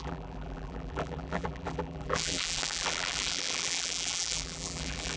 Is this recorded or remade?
remade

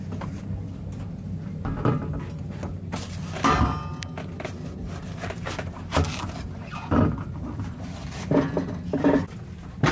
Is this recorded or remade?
recorded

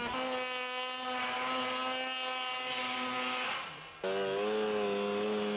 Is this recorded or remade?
recorded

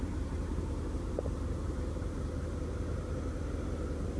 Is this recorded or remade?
remade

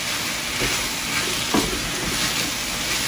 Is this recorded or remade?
recorded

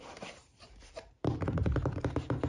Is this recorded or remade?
remade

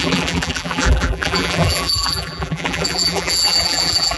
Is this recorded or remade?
remade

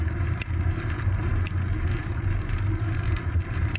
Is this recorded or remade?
remade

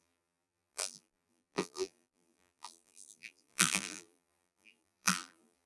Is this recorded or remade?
remade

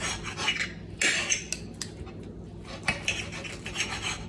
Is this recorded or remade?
recorded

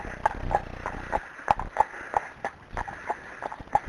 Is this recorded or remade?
recorded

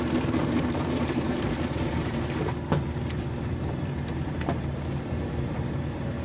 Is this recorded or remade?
remade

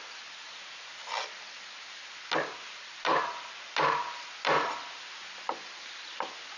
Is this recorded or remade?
recorded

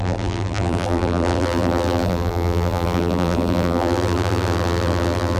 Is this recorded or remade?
remade